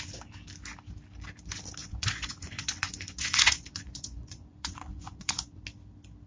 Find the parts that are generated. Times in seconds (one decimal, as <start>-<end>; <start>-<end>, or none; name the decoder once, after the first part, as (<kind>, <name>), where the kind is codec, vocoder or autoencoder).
1.8-5.6 (vocoder, Vocos)